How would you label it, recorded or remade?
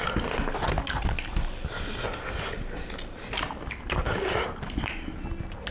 recorded